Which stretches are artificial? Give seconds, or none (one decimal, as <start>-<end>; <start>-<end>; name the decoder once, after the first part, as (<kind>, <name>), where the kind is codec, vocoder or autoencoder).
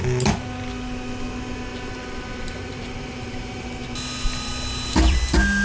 1.7-3.7 (vocoder, BigVGAN v2)